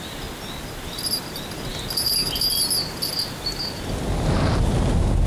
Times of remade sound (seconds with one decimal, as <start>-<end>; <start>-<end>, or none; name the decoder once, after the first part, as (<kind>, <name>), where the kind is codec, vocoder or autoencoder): none